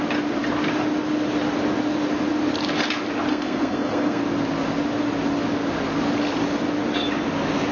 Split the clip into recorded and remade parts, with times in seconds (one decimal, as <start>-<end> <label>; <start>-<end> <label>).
0.0-3.3 recorded; 3.3-4.2 remade; 4.2-7.7 recorded